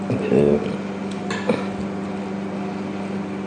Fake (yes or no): no